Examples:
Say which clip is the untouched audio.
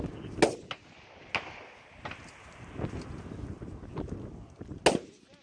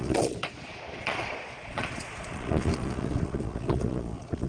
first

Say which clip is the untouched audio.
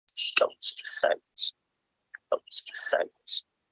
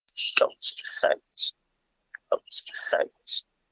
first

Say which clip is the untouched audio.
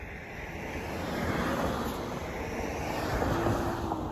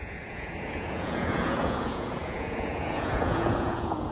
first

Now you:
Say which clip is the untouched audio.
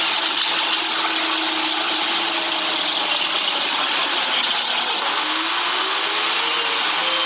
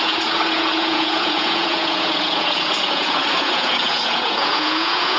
first